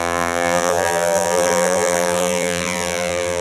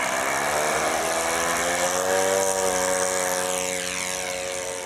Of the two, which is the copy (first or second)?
first